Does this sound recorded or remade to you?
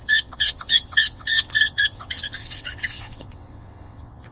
remade